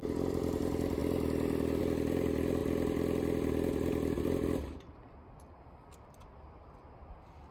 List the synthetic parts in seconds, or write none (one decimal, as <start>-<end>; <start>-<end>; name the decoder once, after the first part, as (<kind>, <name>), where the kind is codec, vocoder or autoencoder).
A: none